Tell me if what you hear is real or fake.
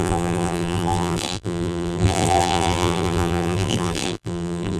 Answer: fake